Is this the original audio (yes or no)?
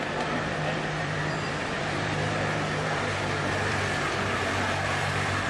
no